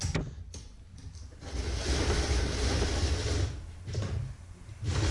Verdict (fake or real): real